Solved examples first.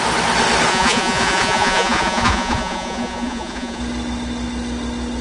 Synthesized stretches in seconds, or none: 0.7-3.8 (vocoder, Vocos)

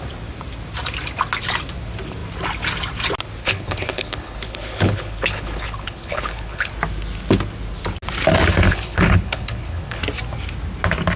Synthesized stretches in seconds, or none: 3.4-6.7 (codec, HILCodec); 8.5-10.0

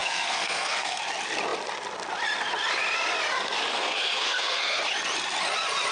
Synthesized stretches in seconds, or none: 0.0-1.0 (codec, SNAC); 3.7-4.8

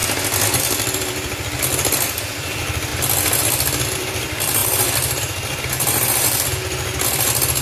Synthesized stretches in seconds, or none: 0.6-2.9 (vocoder, BigVGAN v2); 3.5-7.6

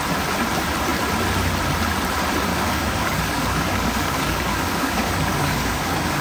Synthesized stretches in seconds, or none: 2.5-6.2 (codec, DAC)

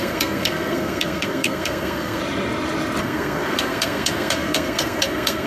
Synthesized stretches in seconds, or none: 0.0-2.2 (codec, SNAC); 3.0-5.5

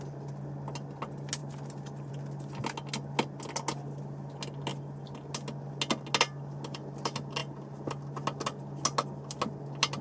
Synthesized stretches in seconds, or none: none